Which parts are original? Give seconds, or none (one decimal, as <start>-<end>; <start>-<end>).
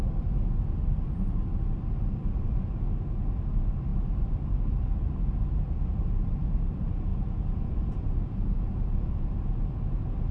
0.0-7.1; 9.3-10.3